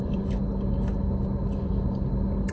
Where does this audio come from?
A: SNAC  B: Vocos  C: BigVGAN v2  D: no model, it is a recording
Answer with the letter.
D